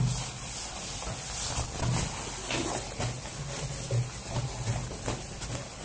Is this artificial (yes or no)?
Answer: no